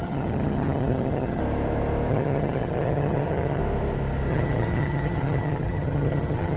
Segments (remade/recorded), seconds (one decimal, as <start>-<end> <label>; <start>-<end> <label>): 0.0-1.4 remade; 1.4-2.1 recorded; 2.1-3.6 remade; 3.6-4.3 recorded; 4.3-6.6 remade